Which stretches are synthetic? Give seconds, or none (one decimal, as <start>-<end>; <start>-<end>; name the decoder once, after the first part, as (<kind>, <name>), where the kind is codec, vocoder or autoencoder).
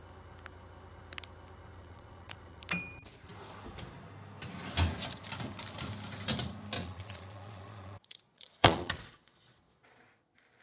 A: 1.7-2.6 (vocoder, Vocos); 6.8-10.0